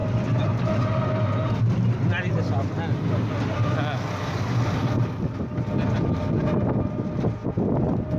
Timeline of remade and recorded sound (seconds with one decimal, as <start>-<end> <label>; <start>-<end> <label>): 0.0-8.2 recorded